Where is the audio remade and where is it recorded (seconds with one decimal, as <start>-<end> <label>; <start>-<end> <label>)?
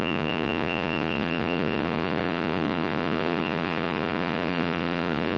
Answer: 0.0-5.4 remade